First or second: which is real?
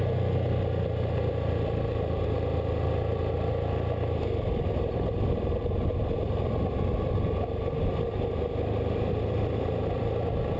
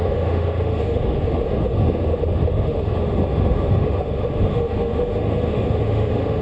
first